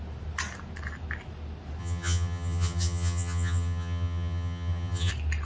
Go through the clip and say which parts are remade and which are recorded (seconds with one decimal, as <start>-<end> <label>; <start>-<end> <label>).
0.0-1.8 recorded; 1.8-5.1 remade; 5.1-5.5 recorded

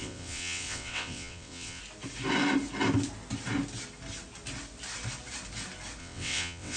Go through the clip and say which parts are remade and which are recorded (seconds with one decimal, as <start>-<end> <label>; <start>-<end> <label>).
0.0-1.8 remade; 1.8-6.0 recorded; 6.0-6.8 remade

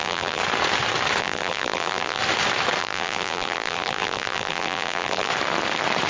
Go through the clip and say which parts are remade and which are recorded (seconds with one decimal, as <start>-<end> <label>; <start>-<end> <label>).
0.0-0.4 remade; 0.4-1.2 recorded; 1.2-2.2 remade; 2.2-2.8 recorded; 2.8-5.3 remade; 5.3-6.1 recorded

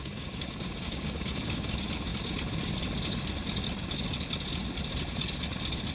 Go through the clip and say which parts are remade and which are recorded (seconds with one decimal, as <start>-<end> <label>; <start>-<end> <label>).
0.0-1.7 remade; 1.7-5.9 recorded

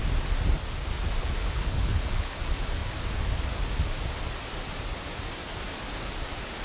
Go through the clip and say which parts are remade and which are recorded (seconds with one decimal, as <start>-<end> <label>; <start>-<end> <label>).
0.0-1.2 recorded; 1.2-2.4 remade; 2.4-6.6 recorded

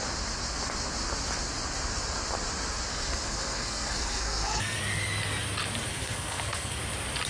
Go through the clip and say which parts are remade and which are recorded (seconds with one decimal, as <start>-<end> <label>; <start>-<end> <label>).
0.0-2.9 recorded; 2.9-4.8 remade; 4.8-5.9 recorded; 5.9-6.8 remade; 6.8-7.3 recorded